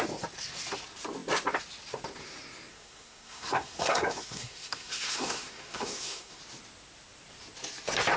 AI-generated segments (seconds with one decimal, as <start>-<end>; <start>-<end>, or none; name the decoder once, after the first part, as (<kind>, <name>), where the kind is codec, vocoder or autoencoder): 2.7-6.4 (codec, SNAC)

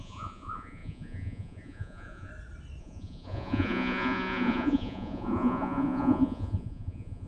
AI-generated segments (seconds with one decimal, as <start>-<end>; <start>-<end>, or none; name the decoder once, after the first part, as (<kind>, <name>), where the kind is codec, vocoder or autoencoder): 0.0-2.3 (vocoder, Vocos); 2.8-7.3

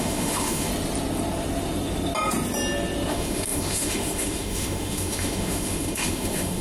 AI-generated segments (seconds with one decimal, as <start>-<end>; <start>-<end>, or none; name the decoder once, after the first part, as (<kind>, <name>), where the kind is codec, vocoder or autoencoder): 0.0-0.7 (autoencoder, DAC-VAE); 3.1-6.6

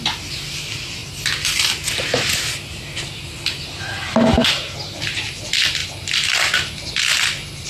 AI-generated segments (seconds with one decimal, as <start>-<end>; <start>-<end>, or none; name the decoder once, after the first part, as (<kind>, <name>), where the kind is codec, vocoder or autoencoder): none

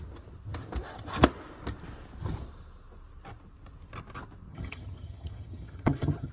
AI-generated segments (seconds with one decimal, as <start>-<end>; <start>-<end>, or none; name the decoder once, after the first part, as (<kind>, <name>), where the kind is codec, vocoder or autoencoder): 4.5-6.3 (vocoder, HiFi-GAN)

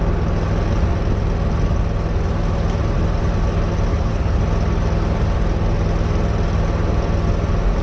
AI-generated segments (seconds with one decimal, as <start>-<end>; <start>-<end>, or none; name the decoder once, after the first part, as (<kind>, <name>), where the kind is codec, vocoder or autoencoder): 3.9-4.4 (codec, HILCodec)